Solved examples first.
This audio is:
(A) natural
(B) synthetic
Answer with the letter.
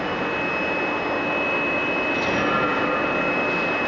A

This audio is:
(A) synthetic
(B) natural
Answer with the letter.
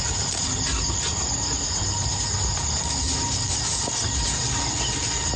B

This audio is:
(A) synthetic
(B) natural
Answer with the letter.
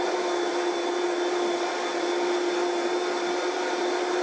B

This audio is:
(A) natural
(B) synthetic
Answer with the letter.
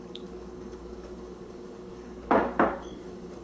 B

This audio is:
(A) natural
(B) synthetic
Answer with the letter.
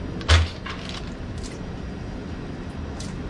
A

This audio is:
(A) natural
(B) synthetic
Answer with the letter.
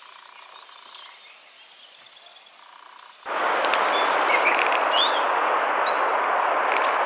A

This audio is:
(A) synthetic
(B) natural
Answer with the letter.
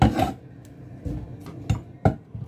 B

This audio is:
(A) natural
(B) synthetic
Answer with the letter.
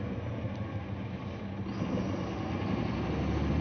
A